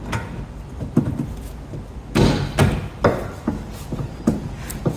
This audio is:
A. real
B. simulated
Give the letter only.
A